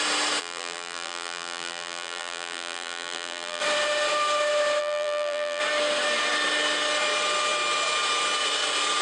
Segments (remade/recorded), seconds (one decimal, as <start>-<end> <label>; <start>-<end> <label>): 0.0-0.4 recorded; 0.4-3.6 remade; 3.6-4.8 recorded; 4.8-5.6 remade; 5.6-9.0 recorded